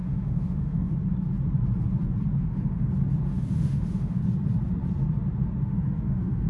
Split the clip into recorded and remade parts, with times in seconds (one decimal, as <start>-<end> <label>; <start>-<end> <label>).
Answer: 0.0-0.9 remade; 0.9-2.4 recorded; 2.4-2.9 remade; 2.9-3.3 recorded; 3.3-4.2 remade; 4.2-5.6 recorded; 5.6-6.5 remade